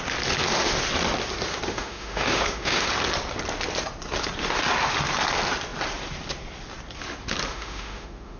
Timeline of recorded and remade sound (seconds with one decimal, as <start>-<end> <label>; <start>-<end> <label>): 0.0-1.7 recorded; 1.7-2.9 remade; 2.9-7.5 recorded; 7.5-8.4 remade